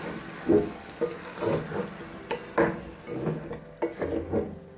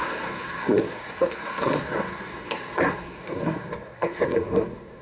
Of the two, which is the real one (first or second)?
first